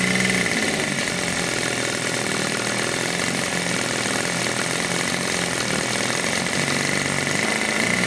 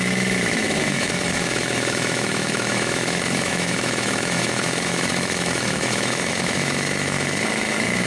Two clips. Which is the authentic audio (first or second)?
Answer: first